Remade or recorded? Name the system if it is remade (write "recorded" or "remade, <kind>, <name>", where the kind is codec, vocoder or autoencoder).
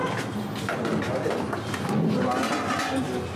recorded